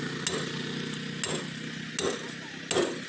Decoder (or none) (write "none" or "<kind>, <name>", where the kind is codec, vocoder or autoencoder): none